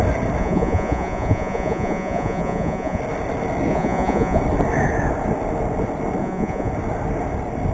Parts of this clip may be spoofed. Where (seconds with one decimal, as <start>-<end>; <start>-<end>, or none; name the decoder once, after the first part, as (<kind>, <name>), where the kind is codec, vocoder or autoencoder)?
0.4-3.0 (vocoder, Vocos); 3.7-4.4; 6.2-6.7

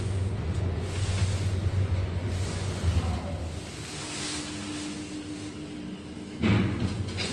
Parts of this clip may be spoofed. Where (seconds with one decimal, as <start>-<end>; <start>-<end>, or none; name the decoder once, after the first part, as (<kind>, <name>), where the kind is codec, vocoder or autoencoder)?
0.0-2.8 (vocoder, Vocos); 6.6-7.3